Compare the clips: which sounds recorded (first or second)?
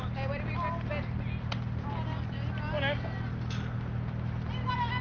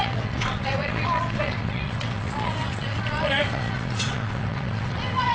first